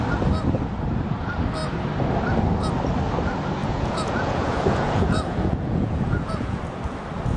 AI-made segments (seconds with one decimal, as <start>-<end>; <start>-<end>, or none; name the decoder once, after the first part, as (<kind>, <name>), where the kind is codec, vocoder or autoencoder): 3.6-6.6 (vocoder, Vocos)